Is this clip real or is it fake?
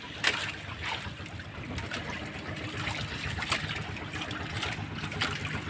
real